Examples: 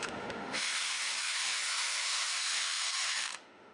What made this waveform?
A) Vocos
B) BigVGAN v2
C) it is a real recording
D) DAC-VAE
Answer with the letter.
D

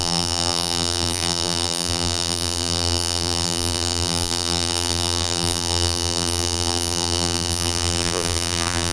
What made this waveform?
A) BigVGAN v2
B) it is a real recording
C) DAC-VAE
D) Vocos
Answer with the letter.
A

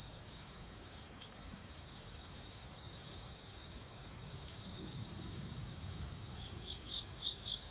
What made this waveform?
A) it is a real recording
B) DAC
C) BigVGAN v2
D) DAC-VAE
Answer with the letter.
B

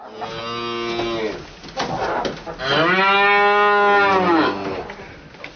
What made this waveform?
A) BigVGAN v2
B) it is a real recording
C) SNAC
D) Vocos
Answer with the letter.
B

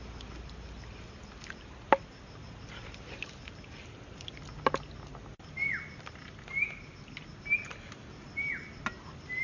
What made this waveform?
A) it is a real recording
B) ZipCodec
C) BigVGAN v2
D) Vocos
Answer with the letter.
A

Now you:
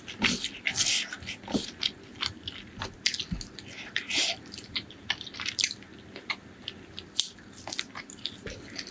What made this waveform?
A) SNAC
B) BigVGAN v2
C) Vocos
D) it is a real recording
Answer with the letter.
D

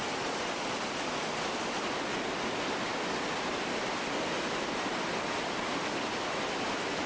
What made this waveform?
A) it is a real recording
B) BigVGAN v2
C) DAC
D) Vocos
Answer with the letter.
A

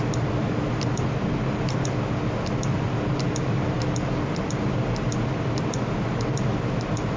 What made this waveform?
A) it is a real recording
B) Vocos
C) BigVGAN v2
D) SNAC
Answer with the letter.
A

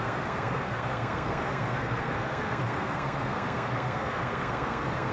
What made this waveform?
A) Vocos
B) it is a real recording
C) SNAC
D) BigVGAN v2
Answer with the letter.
C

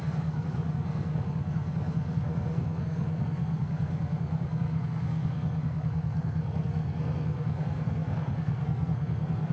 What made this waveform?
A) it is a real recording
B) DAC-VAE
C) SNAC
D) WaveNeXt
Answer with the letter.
C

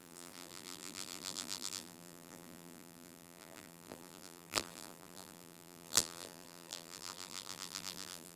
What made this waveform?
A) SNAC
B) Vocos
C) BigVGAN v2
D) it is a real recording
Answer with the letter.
C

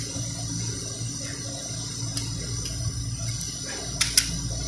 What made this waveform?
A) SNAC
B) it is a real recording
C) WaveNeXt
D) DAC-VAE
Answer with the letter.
B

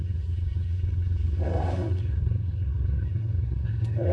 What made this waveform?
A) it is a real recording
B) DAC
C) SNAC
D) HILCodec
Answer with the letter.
C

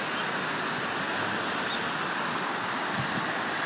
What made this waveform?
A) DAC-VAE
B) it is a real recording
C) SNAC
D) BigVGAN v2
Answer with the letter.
B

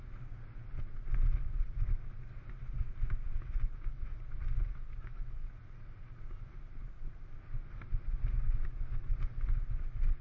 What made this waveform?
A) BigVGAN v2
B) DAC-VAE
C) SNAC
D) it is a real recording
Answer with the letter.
D